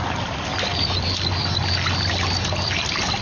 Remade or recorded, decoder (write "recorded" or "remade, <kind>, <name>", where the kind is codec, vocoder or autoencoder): recorded